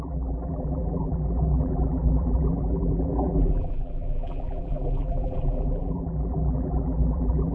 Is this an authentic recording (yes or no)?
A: no